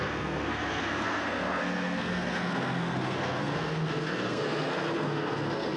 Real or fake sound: fake